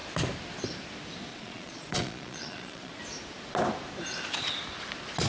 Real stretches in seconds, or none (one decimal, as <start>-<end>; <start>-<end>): 0.0-1.3; 3.0-5.3